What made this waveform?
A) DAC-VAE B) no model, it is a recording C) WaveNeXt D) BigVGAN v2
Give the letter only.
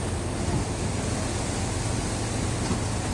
B